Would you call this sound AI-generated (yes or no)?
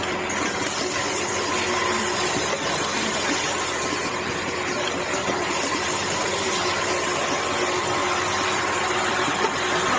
no